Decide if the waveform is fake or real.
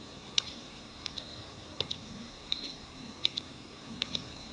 fake